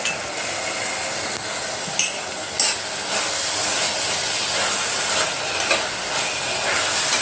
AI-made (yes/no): no